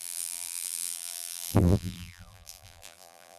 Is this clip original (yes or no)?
no